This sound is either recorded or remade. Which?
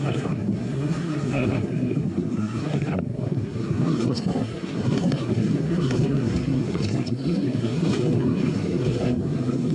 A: remade